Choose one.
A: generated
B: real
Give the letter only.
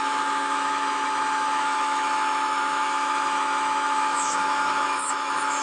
A